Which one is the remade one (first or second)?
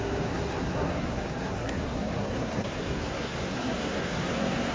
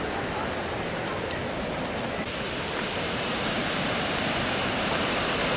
first